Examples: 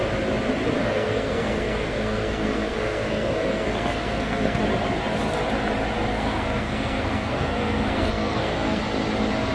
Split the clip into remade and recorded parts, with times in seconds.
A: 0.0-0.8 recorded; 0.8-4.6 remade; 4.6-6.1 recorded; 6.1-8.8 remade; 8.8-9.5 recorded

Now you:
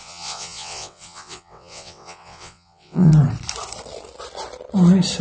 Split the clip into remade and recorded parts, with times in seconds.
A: 0.0-3.1 remade; 3.1-5.2 recorded

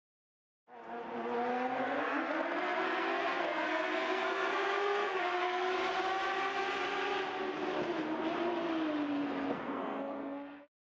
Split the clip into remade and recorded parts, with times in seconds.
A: 0.0-1.5 recorded; 1.5-5.7 remade; 5.7-9.1 recorded; 9.1-10.9 remade

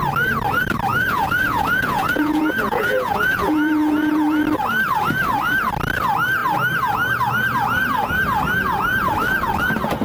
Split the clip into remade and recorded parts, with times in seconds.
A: 0.0-0.9 recorded; 0.9-4.4 remade; 4.4-10.0 recorded